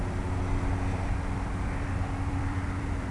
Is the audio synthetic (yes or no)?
yes